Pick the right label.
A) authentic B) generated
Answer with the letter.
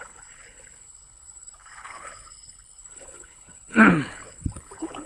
B